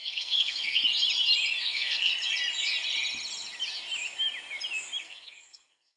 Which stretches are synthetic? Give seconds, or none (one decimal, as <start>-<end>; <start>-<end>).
0.0-0.8; 1.6-2.1; 5.0-6.0